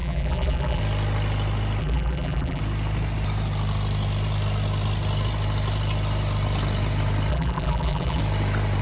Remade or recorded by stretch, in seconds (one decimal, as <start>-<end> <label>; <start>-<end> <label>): 0.0-0.8 remade; 0.8-1.8 recorded; 1.8-2.6 remade; 2.6-7.3 recorded; 7.3-8.2 remade; 8.2-8.8 recorded